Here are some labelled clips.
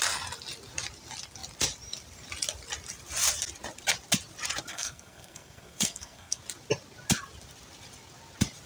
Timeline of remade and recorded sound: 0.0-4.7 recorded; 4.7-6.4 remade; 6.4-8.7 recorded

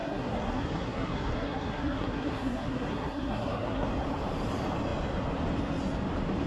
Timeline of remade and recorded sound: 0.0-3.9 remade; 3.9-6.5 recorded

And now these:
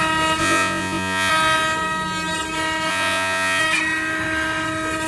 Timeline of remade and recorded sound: 0.0-0.4 recorded; 0.4-1.3 remade; 1.3-2.9 recorded; 2.9-3.6 remade; 3.6-5.1 recorded

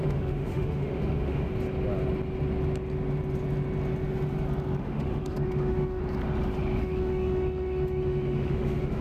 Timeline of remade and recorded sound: 0.0-1.5 remade; 1.5-4.8 recorded; 4.8-6.0 remade; 6.0-6.8 recorded; 6.8-9.0 remade